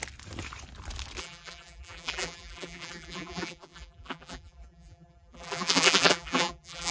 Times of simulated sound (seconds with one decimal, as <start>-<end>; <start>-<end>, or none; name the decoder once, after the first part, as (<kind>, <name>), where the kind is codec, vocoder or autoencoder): 1.2-6.9 (vocoder, BigVGAN v2)